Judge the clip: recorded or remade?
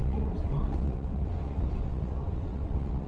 remade